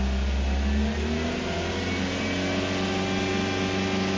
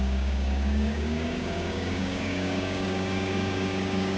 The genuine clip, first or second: first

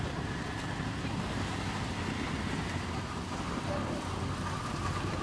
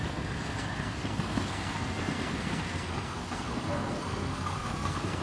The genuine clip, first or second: first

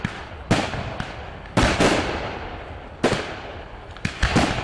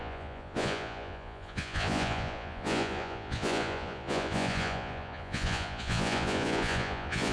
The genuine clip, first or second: first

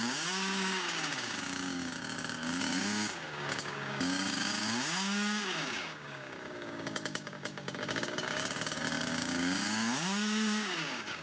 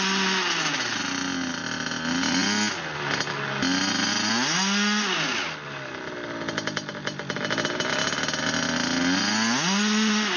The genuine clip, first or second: second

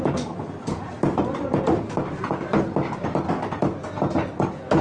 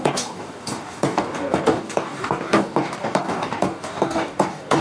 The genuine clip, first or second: first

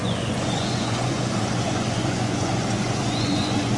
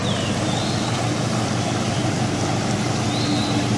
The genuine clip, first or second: second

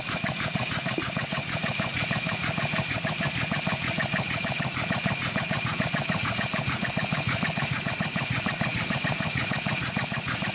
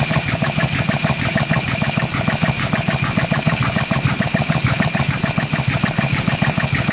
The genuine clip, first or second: second